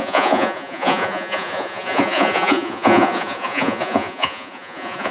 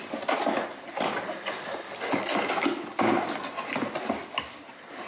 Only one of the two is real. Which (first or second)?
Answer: second